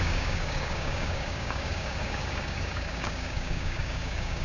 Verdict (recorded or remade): remade